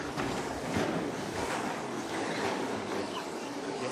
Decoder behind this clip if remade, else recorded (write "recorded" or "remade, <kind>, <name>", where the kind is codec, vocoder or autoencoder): remade, codec, DAC